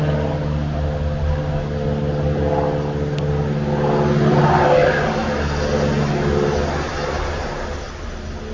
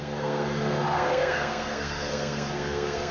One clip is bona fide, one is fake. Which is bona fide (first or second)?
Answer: first